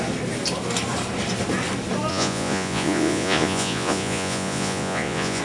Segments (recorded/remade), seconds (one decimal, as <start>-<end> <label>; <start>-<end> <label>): 0.0-2.1 recorded; 2.1-5.4 remade